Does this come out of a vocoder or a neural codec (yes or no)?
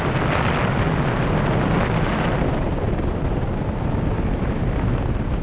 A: no